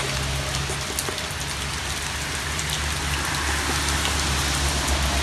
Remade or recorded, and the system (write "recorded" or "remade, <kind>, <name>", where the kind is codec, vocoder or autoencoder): recorded